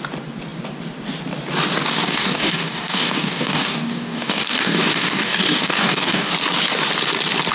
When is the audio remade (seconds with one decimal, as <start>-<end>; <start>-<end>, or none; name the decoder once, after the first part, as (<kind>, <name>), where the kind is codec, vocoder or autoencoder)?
1.8-6.3 (codec, DAC)